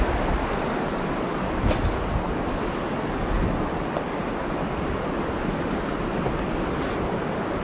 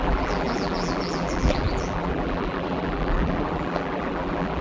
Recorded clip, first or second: first